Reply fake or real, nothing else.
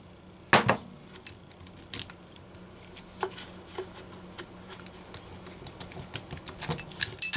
real